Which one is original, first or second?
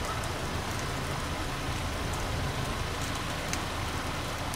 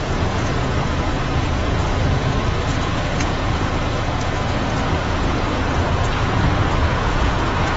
first